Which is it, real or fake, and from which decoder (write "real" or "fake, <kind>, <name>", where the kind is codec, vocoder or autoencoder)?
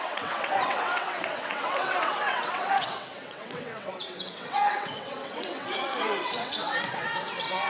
fake, vocoder, WaveNeXt